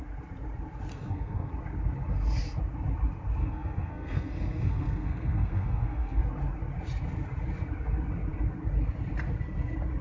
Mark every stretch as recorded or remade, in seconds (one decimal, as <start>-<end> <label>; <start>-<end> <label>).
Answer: 0.0-0.9 recorded; 0.9-1.5 remade; 1.5-3.4 recorded; 3.4-6.2 remade; 6.2-10.0 recorded